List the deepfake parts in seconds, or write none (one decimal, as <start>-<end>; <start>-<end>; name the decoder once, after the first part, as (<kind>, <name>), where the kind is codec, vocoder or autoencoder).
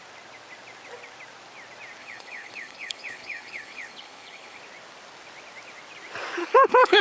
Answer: 2.0-4.6 (codec, HILCodec); 6.4-7.0